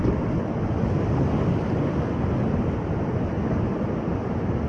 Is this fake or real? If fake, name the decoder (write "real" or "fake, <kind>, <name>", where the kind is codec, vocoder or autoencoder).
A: real